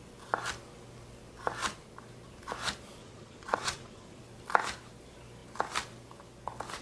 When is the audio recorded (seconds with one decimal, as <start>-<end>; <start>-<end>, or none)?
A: 0.0-3.0; 4.2-6.8